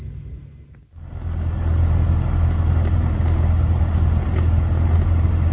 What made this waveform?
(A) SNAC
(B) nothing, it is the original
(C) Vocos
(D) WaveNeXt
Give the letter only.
B